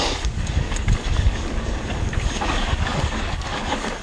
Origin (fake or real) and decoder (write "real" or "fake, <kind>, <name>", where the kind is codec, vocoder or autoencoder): fake, codec, DAC